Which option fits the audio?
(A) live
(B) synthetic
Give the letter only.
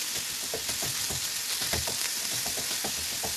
A